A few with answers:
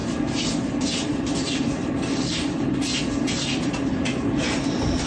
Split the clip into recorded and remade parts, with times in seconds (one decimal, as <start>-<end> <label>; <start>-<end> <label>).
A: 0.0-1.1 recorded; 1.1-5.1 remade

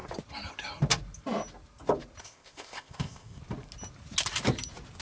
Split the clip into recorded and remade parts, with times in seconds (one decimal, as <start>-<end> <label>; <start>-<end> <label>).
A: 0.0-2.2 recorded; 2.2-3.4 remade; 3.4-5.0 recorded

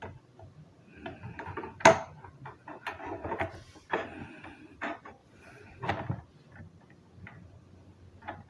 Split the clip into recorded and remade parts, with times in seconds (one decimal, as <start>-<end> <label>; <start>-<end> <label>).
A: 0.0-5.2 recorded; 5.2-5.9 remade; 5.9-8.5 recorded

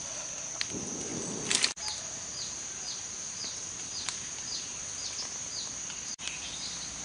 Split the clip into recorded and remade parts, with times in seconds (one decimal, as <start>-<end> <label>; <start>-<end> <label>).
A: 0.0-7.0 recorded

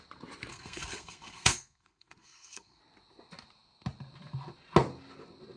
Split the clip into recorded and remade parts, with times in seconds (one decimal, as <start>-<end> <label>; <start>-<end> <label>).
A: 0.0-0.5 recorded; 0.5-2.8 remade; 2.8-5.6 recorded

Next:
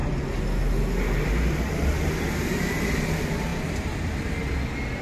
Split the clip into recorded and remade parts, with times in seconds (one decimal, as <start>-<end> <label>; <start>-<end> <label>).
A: 0.0-5.0 recorded